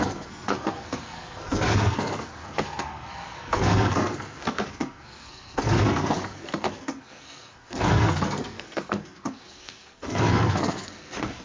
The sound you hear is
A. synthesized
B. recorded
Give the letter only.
A